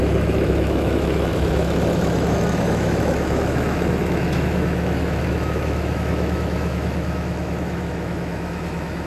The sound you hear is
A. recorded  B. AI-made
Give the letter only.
B